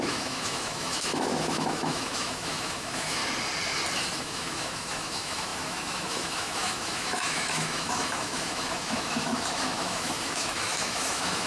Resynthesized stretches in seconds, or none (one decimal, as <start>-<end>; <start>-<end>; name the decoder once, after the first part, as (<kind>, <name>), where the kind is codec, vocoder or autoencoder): 0.0-3.2 (autoencoder, DAC-VAE); 4.2-11.5